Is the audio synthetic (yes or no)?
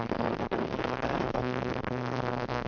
yes